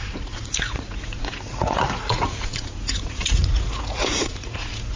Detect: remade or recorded remade